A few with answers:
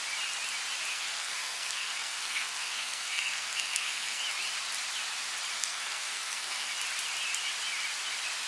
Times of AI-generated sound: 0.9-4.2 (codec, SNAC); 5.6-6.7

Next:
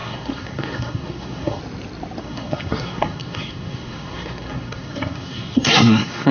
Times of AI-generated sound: 0.0-1.6 (codec, SNAC); 2.2-6.3